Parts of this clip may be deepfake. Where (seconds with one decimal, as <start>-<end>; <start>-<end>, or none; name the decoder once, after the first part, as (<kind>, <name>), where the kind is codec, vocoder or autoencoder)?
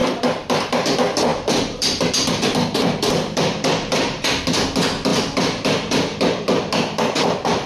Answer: 0.0-0.6 (vocoder, BigVGAN v2); 1.3-4.4; 5.1-6.7